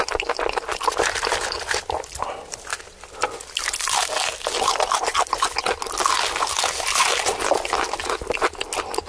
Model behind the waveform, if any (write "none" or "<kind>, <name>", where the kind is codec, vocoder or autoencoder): none